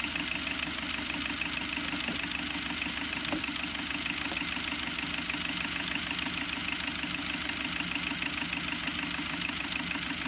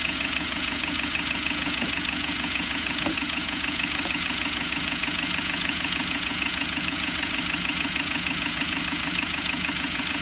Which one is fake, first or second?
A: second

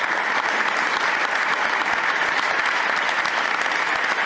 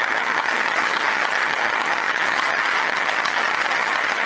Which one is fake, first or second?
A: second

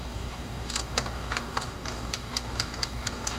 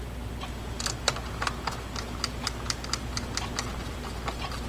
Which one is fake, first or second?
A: first